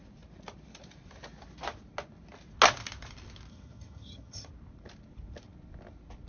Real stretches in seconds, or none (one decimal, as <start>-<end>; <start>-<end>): 0.0-3.5; 4.5-6.3